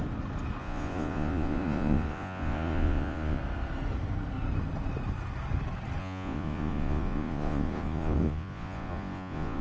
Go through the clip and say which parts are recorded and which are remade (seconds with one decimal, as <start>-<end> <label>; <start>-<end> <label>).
0.0-0.6 recorded; 0.6-3.4 remade; 3.4-6.0 recorded; 6.0-9.6 remade